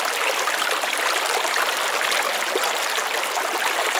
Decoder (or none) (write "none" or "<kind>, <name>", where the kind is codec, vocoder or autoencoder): none